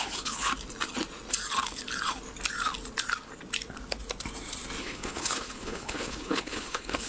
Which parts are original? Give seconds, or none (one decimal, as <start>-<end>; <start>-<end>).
0.5-4.8